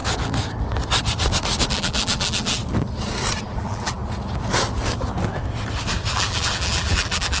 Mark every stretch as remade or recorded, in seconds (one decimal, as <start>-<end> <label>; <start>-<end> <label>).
0.0-1.7 recorded; 1.7-2.6 remade; 2.6-3.4 recorded; 3.4-4.0 remade; 4.0-6.1 recorded; 6.1-7.4 remade